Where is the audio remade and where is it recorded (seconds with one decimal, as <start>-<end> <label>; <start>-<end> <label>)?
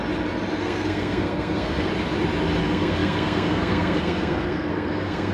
0.0-0.6 recorded; 0.6-1.9 remade; 1.9-2.6 recorded; 2.6-5.3 remade